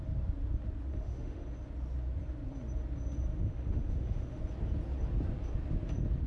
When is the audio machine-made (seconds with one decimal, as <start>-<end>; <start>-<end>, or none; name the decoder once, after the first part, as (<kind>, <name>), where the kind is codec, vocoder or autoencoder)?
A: 0.9-1.5 (autoencoder, DAC-VAE); 3.3-4.4